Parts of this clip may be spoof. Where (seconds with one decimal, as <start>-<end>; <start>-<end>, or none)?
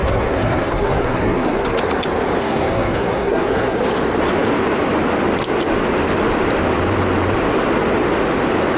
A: 0.0-1.8; 2.4-3.8